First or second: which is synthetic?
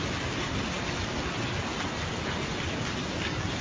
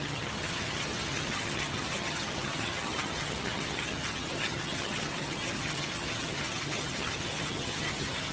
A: second